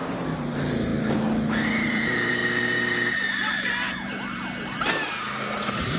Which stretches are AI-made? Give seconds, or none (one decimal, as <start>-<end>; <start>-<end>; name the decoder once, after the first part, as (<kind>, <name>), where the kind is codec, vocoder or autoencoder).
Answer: 0.0-0.9 (vocoder, BigVGAN v2); 1.7-2.4; 3.5-6.0